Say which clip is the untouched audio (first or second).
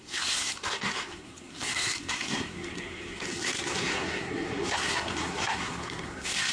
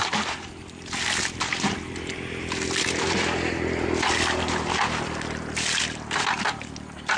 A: second